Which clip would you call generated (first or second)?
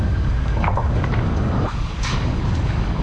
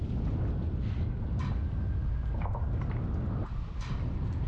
first